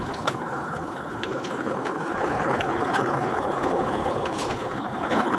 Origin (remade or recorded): remade